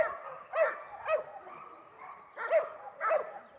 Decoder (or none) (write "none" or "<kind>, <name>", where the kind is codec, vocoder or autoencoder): none